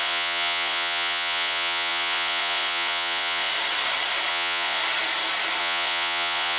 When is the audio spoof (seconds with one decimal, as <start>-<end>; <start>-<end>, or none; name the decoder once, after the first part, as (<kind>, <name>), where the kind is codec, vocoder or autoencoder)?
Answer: 0.0-3.5 (vocoder, Vocos); 4.3-4.8; 5.6-6.6